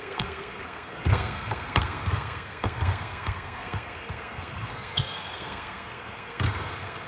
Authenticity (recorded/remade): remade